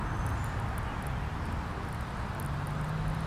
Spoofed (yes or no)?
no